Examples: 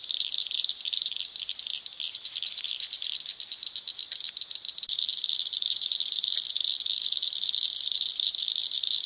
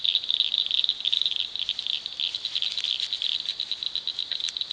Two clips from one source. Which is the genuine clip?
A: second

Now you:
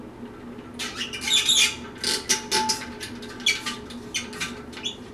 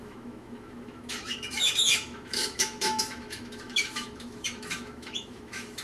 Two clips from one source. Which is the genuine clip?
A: first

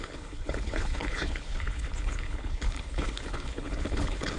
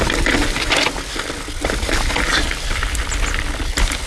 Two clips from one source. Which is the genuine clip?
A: second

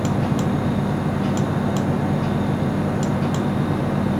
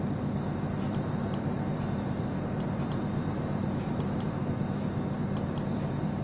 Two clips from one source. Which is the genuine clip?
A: first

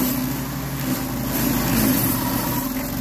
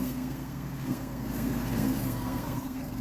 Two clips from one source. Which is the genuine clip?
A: first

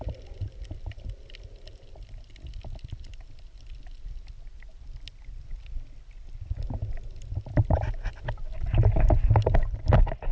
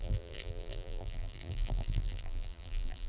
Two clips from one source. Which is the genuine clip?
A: first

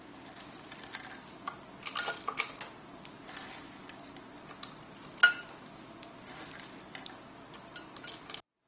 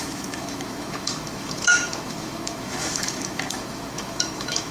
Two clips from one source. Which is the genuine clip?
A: first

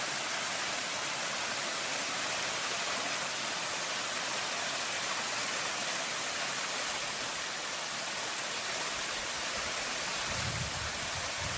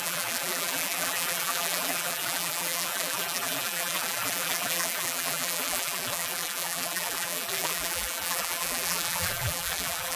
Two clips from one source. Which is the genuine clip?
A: first